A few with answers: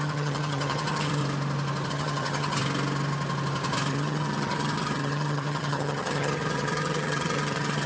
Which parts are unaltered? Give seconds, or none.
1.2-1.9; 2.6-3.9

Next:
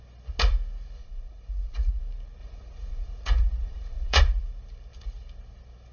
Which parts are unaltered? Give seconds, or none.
0.0-1.0; 2.0-2.4; 4.2-5.9

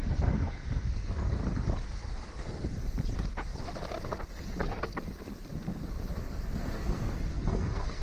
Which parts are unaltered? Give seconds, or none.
1.4-6.2

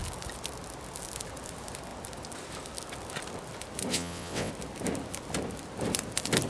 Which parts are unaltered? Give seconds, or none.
0.0-3.9; 4.5-6.5

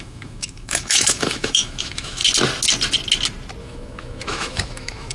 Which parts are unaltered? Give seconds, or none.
2.2-3.6